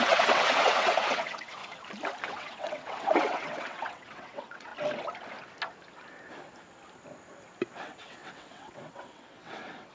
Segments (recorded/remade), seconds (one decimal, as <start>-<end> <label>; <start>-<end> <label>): 0.0-1.6 remade; 1.6-2.3 recorded; 2.3-4.7 remade; 4.7-7.8 recorded; 7.8-9.9 remade

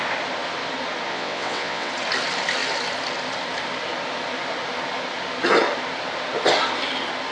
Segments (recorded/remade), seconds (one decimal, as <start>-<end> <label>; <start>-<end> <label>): 0.0-1.1 recorded; 1.1-1.9 remade; 1.9-7.3 recorded

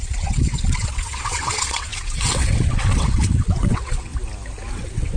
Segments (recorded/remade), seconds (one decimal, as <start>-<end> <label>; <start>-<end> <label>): 0.0-4.1 remade; 4.1-4.7 recorded; 4.7-5.2 remade

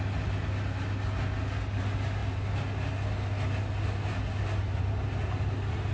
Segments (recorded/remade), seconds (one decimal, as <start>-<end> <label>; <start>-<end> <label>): 0.0-5.9 recorded

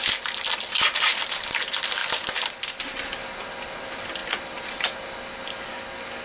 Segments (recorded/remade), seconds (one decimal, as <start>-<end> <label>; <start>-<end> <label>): 0.0-6.2 recorded